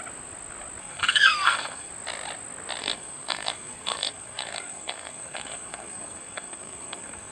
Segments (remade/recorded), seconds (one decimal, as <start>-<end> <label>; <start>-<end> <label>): 0.0-0.8 recorded; 0.8-1.9 remade; 1.9-2.8 recorded; 2.8-7.3 remade